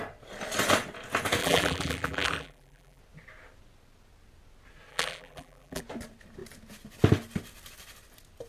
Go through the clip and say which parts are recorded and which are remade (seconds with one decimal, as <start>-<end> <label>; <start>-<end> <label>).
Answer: 0.0-1.4 recorded; 1.4-3.0 remade; 3.0-4.9 recorded; 4.9-5.8 remade; 5.8-8.5 recorded